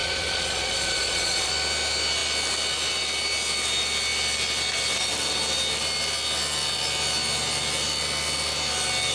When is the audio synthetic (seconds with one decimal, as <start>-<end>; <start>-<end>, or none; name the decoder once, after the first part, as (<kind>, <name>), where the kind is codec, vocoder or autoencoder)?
0.0-1.5 (vocoder, Vocos)